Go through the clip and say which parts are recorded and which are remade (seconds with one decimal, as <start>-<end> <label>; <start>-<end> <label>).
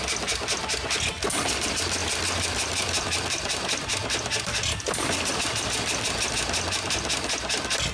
0.0-2.0 recorded; 2.0-6.3 remade; 6.3-7.9 recorded